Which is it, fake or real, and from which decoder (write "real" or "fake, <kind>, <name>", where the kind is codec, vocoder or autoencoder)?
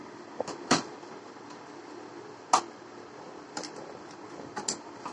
real